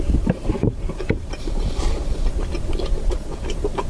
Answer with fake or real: fake